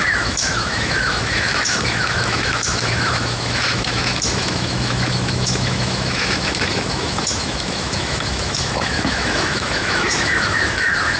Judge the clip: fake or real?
fake